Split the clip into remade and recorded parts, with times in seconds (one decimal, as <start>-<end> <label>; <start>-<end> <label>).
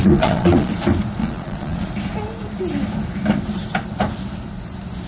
0.0-0.7 remade; 0.7-1.2 recorded; 1.2-1.9 remade; 1.9-5.1 recorded